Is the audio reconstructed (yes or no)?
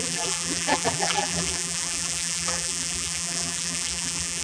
yes